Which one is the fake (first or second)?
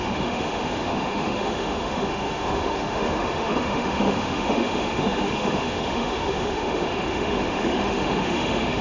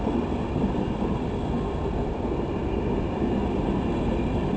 first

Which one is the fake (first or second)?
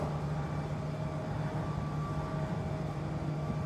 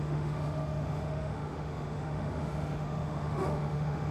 second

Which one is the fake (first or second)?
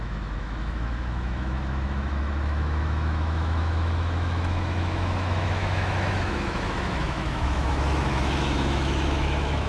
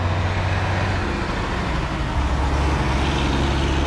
first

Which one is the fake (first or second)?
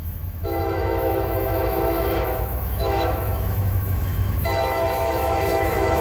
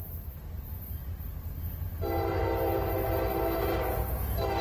first